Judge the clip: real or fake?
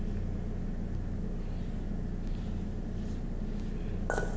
real